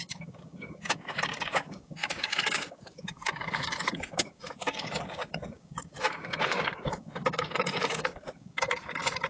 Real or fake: fake